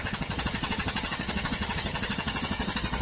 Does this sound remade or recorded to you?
remade